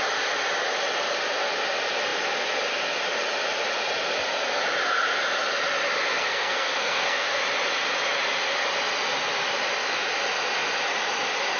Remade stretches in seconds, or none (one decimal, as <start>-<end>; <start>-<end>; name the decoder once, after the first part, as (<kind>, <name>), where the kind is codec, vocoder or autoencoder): 6.1-7.4 (codec, SNAC)